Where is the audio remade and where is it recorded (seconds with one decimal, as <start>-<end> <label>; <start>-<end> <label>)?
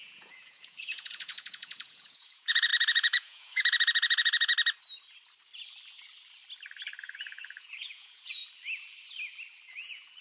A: 0.0-4.5 remade; 4.5-7.0 recorded; 7.0-8.4 remade; 8.4-9.7 recorded; 9.7-10.2 remade